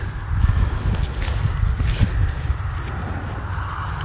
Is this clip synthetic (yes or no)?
no